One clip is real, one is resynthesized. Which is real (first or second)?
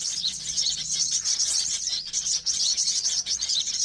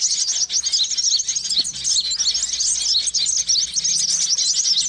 second